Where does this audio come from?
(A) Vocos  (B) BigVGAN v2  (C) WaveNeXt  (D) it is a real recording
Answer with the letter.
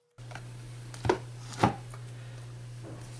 D